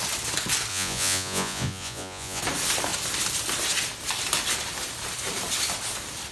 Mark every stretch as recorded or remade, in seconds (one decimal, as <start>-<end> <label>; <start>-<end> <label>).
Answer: 0.0-0.7 recorded; 0.7-2.4 remade; 2.4-6.3 recorded